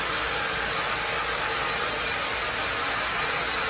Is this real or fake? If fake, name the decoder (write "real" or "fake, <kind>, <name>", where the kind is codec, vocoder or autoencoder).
real